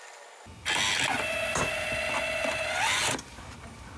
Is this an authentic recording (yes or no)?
yes